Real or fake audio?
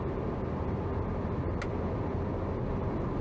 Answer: real